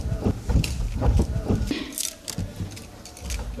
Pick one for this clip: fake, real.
real